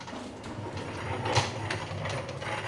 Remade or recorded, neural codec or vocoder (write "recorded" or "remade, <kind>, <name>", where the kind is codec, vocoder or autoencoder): recorded